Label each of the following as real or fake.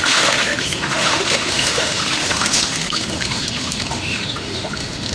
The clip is fake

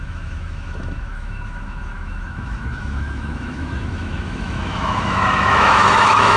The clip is fake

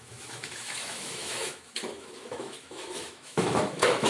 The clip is fake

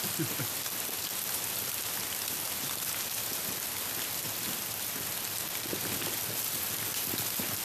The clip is real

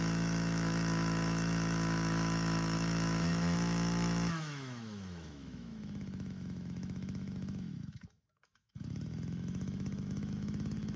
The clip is fake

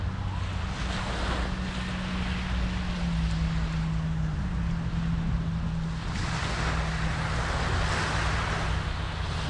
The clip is real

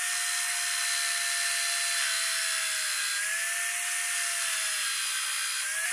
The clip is real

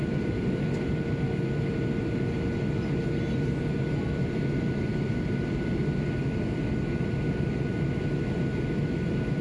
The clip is real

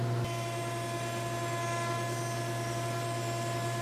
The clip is real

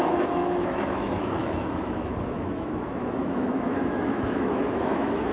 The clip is fake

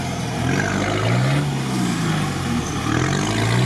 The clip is real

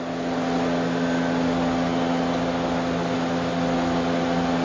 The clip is real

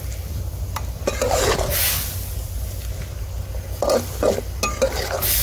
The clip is real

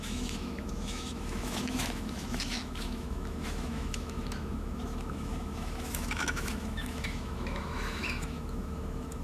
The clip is fake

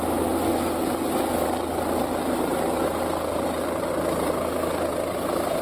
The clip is real